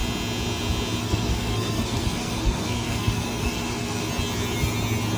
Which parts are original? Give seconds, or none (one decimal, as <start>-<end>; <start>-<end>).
0.0-1.0; 4.1-5.2